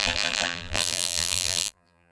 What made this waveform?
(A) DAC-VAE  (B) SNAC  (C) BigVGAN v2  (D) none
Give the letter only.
C